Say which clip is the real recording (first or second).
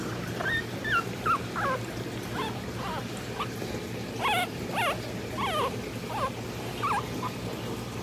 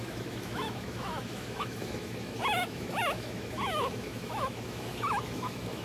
first